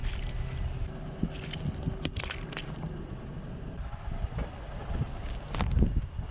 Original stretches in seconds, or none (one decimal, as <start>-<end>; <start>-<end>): 0.0-6.3